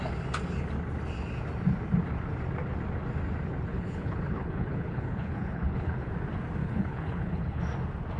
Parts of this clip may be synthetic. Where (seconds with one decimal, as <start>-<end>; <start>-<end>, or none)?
3.7-6.1; 6.6-7.6